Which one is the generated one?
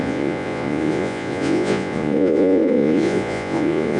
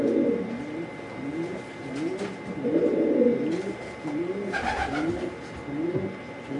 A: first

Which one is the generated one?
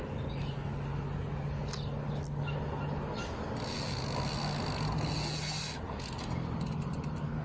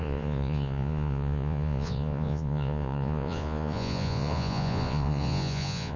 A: second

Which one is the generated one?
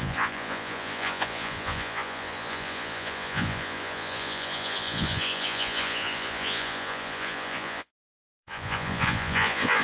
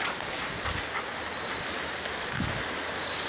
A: first